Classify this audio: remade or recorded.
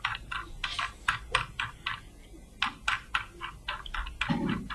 recorded